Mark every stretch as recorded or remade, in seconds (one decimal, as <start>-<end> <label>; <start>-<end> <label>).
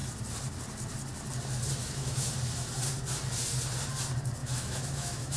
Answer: 0.0-1.8 recorded; 1.8-2.3 remade; 2.3-4.4 recorded; 4.4-5.4 remade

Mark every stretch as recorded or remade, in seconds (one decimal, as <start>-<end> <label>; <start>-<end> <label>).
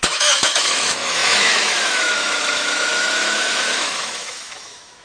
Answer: 0.0-5.0 remade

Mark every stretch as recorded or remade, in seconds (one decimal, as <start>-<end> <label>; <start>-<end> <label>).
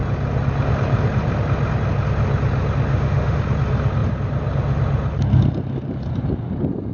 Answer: 0.0-2.9 recorded; 2.9-3.4 remade; 3.4-6.9 recorded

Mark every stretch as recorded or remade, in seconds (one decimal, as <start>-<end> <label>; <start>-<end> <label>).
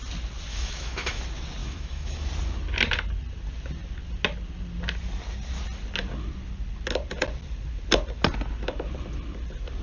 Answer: 0.0-0.5 recorded; 0.5-1.2 remade; 1.2-1.6 recorded; 1.6-2.3 remade; 2.3-9.8 recorded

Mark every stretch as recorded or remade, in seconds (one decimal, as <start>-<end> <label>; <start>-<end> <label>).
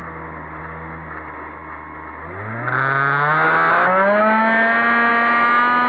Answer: 0.0-5.9 recorded